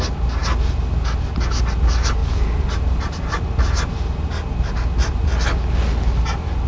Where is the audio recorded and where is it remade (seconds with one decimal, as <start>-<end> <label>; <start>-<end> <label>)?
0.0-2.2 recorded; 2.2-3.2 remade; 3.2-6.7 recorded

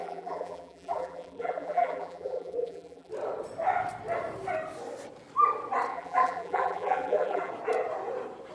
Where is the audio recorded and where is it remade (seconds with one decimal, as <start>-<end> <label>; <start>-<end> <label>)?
0.0-3.1 remade; 3.1-5.9 recorded; 5.9-7.5 remade; 7.5-8.5 recorded

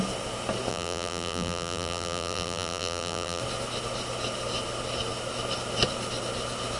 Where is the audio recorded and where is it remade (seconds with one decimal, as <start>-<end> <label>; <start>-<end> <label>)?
0.0-0.7 recorded; 0.7-3.4 remade; 3.4-6.8 recorded